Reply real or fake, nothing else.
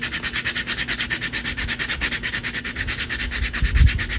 real